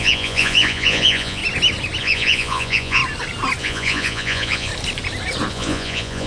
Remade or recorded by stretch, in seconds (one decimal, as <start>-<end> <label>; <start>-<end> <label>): 0.0-1.4 remade; 1.4-2.0 recorded; 2.0-3.0 remade; 3.0-3.6 recorded; 3.6-4.7 remade; 4.7-5.5 recorded; 5.5-6.3 remade